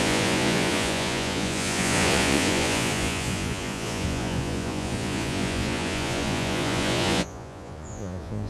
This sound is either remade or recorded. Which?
remade